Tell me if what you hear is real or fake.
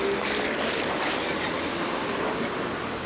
real